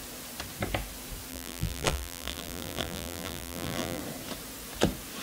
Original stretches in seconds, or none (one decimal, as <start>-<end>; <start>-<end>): 0.0-1.3; 4.0-5.2